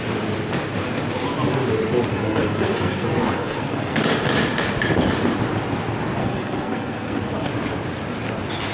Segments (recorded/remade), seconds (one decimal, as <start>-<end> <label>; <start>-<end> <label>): 0.0-2.1 recorded; 2.1-4.0 remade; 4.0-6.2 recorded; 6.2-7.5 remade; 7.5-8.7 recorded